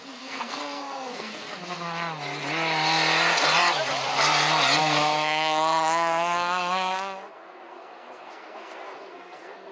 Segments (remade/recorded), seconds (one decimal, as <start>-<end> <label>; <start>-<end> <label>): 0.0-1.6 remade; 1.6-4.8 recorded; 4.8-9.7 remade